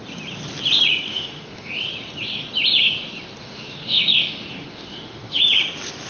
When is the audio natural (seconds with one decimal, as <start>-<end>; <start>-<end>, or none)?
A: 0.0-1.1; 1.7-3.4; 5.4-6.1